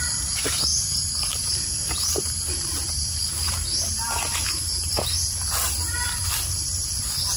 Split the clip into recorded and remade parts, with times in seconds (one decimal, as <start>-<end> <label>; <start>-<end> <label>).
0.0-0.7 recorded; 0.7-3.2 remade; 3.2-7.4 recorded